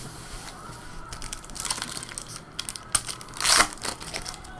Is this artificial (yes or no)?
no